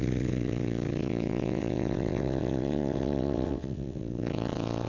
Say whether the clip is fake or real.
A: fake